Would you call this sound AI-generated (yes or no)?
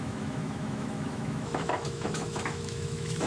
yes